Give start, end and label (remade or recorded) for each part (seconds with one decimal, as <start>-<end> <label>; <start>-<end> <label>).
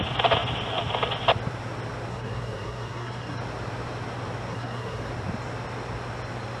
0.0-2.1 recorded; 2.1-3.4 remade; 3.4-4.5 recorded; 4.5-5.1 remade; 5.1-6.6 recorded